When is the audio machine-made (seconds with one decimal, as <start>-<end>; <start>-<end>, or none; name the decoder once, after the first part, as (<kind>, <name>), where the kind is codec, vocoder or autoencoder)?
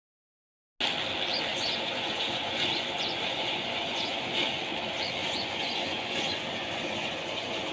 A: 1.5-4.6 (vocoder, Vocos); 5.2-7.7